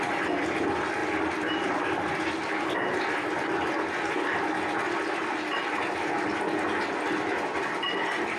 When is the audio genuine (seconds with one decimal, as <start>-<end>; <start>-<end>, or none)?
0.0-8.4